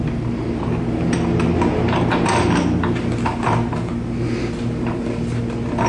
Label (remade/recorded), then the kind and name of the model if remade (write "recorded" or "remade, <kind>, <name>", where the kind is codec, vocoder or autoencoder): recorded